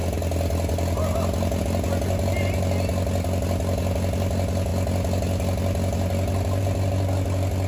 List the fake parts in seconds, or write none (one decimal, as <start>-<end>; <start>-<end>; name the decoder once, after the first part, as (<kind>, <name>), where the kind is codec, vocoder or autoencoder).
none